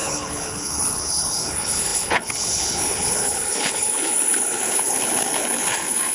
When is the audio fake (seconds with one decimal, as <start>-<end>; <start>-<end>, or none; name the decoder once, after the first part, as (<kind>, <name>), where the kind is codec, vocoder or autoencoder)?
0.0-6.1 (codec, HILCodec)